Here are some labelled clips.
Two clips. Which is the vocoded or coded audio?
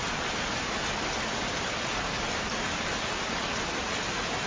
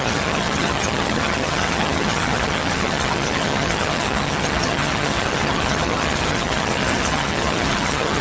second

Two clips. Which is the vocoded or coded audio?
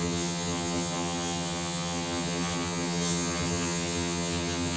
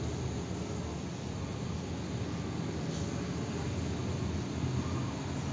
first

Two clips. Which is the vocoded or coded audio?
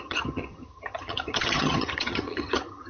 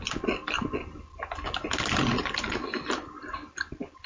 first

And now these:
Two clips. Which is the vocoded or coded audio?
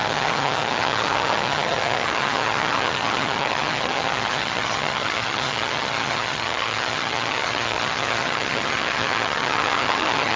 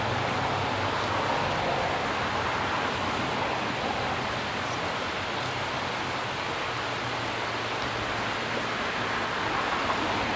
first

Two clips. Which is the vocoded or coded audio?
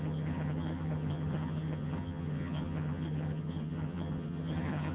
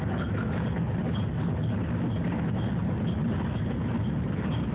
first